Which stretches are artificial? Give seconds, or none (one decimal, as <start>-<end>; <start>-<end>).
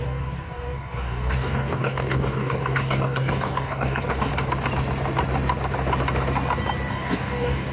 0.0-4.3; 6.9-7.7